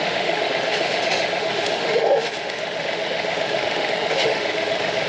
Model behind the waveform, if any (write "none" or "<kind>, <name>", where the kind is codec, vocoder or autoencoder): autoencoder, DAC-VAE